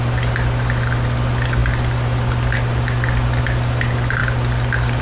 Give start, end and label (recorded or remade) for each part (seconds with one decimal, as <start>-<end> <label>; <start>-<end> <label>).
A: 0.0-5.0 recorded